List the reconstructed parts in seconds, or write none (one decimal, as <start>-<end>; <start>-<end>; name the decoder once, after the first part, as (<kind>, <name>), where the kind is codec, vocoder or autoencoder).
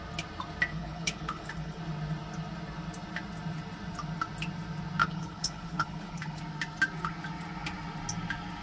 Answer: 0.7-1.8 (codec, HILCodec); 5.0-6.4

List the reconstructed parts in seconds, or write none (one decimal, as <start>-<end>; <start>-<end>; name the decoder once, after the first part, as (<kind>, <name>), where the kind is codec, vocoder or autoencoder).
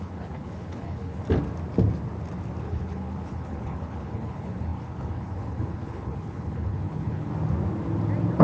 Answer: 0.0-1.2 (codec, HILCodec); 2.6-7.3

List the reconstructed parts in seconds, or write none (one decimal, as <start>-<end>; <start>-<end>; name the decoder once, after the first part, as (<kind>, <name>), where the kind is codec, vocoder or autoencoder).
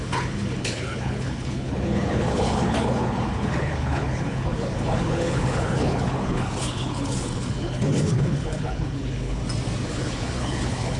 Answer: 0.0-9.4 (codec, HILCodec); 9.9-11.0